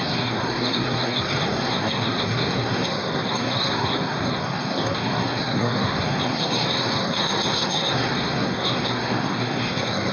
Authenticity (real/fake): fake